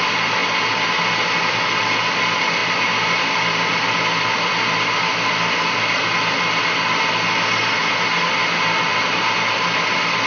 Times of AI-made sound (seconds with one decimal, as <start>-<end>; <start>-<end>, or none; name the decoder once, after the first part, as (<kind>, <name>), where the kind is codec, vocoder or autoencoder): none